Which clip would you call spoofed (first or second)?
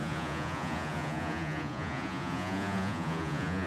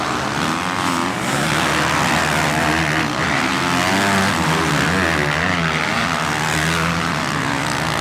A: first